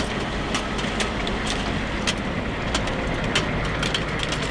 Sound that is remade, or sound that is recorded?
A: recorded